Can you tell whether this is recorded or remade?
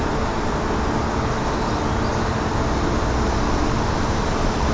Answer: recorded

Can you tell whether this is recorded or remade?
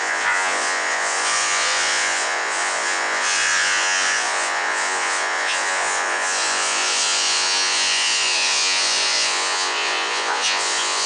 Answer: remade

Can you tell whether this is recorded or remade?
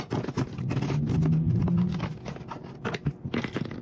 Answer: recorded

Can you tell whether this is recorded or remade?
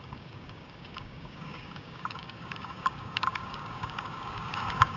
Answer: remade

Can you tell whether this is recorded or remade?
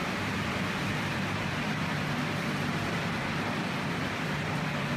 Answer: remade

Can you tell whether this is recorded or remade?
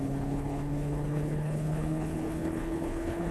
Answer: remade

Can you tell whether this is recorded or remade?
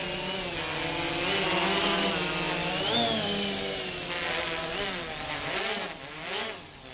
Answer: recorded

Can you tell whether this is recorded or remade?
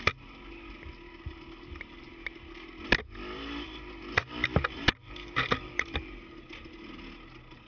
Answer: recorded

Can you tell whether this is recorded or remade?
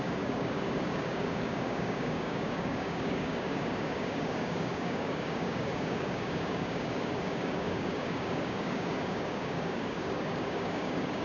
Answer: remade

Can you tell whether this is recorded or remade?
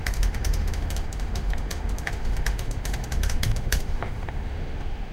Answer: remade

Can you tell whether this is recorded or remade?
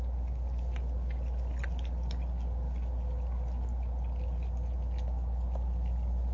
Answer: recorded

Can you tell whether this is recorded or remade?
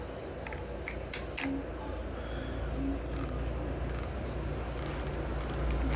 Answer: recorded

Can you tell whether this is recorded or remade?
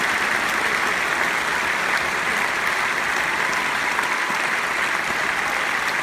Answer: recorded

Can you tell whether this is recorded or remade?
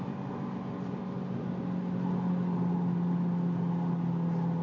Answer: recorded